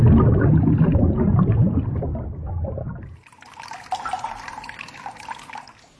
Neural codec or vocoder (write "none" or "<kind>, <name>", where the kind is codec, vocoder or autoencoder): none